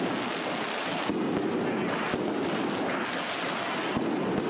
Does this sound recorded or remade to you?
recorded